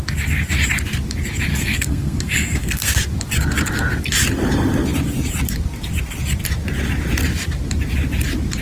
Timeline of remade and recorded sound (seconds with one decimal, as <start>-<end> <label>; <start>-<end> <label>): 0.0-1.5 recorded; 1.5-3.0 remade; 3.0-8.6 recorded